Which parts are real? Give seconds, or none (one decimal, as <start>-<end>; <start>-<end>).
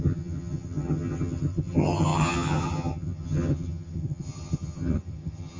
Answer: none